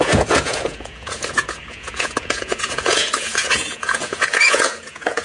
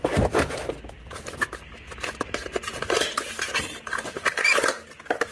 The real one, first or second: second